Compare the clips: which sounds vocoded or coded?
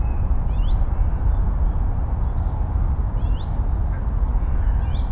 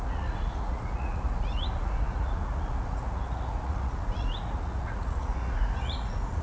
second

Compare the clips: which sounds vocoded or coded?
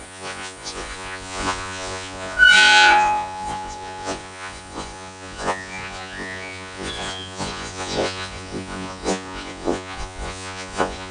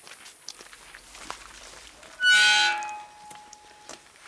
first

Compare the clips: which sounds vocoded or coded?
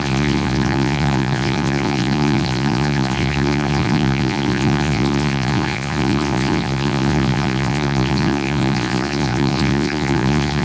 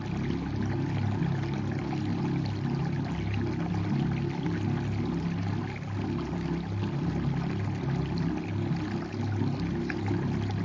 first